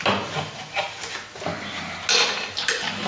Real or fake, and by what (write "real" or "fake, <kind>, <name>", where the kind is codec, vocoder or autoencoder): real